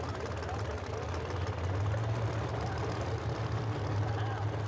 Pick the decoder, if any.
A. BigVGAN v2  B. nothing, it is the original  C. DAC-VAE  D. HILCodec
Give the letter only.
B